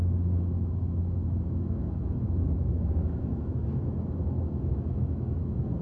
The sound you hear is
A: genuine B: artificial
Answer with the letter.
B